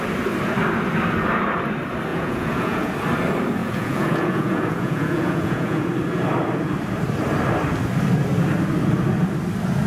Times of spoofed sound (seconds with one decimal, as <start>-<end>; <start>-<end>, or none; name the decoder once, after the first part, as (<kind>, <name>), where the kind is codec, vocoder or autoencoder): 2.1-2.9 (vocoder, Vocos); 3.6-5.9